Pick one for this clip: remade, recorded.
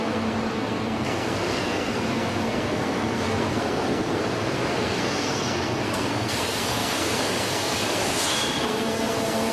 remade